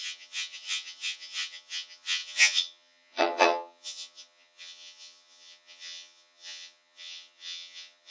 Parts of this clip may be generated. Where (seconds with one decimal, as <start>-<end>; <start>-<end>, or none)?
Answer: 0.0-8.1